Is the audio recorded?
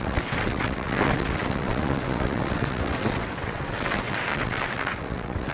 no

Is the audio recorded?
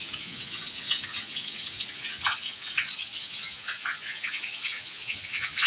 no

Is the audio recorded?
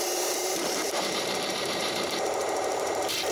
no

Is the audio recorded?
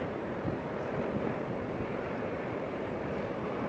no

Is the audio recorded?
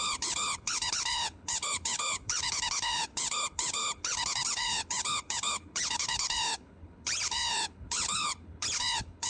no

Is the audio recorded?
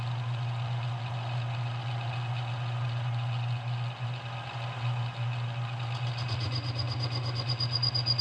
yes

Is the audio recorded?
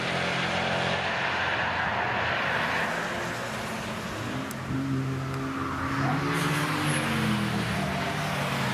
yes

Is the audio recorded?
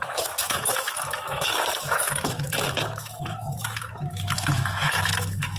no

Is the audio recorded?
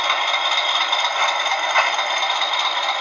yes